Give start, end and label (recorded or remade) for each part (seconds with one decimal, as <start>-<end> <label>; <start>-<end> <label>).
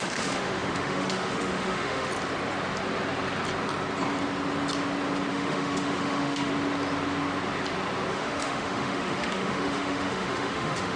0.0-2.1 remade; 2.1-5.3 recorded; 5.3-6.5 remade; 6.5-8.1 recorded; 8.1-11.0 remade